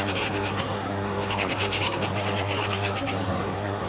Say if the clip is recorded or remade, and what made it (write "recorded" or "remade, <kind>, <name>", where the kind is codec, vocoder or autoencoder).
remade, codec, SNAC